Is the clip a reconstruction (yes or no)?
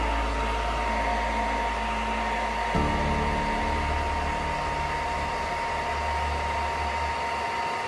no